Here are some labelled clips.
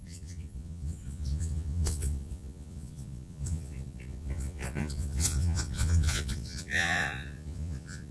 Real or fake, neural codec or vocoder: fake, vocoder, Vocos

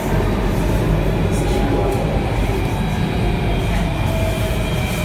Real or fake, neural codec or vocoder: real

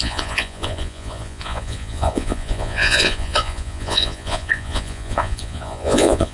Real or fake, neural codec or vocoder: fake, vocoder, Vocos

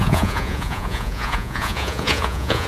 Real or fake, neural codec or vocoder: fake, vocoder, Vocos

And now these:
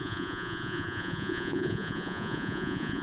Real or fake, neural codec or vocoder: fake, vocoder, Vocos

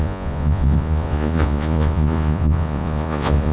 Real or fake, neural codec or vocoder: fake, vocoder, Vocos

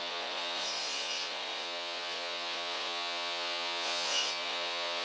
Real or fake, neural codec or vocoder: fake, vocoder, Vocos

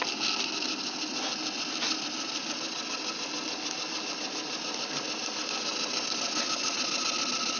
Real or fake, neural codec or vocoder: real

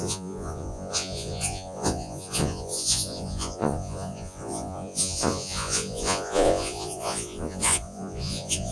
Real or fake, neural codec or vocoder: fake, vocoder, Vocos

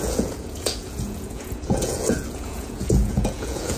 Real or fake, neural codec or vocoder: fake, vocoder, Vocos